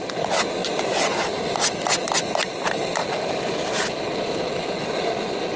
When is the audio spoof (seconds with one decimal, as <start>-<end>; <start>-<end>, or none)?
none